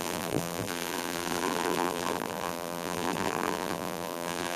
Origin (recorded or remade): remade